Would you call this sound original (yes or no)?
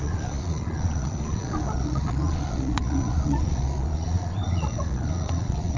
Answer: no